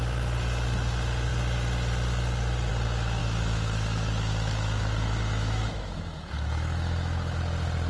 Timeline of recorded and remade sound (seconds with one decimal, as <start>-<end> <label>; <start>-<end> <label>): 0.0-3.2 recorded; 3.2-7.4 remade; 7.4-7.9 recorded